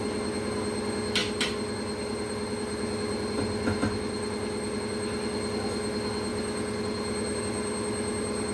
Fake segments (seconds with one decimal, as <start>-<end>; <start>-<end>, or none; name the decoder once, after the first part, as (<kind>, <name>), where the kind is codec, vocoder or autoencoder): none